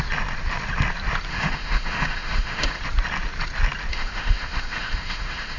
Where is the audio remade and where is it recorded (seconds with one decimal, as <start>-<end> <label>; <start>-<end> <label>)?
0.0-1.3 recorded; 1.3-2.8 remade; 2.8-3.9 recorded; 3.9-5.6 remade